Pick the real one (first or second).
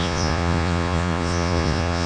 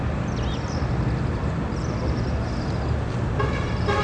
second